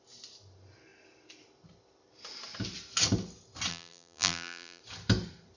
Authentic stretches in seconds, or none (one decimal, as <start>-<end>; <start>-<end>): 0.0-3.7; 4.8-5.6